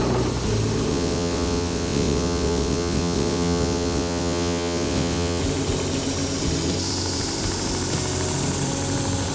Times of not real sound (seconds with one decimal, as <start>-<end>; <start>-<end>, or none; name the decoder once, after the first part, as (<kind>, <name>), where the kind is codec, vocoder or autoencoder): 0.9-5.4 (vocoder, WaveNeXt)